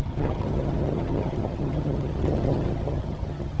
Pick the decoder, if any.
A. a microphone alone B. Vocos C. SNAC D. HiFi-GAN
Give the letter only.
D